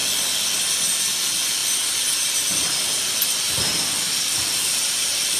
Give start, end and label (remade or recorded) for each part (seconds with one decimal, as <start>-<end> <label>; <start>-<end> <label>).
0.0-5.4 recorded